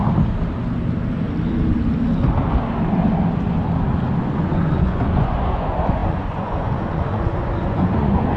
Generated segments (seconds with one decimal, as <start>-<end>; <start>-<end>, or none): 4.2-8.4